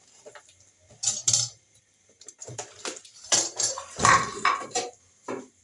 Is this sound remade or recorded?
remade